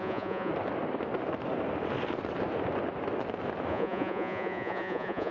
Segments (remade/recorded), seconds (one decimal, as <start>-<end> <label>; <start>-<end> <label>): 0.0-0.5 remade; 0.5-3.7 recorded; 3.7-5.3 remade